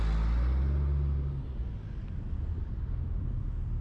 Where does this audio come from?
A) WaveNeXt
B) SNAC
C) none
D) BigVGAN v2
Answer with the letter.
C